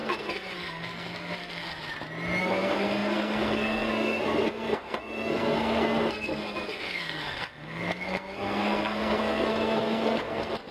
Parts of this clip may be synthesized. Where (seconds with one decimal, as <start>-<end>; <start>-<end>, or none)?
0.0-1.8; 2.4-10.7